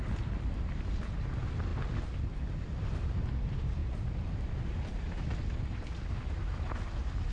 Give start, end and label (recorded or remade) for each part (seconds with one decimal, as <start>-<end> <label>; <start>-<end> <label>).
0.0-7.3 recorded